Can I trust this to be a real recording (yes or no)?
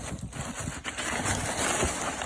yes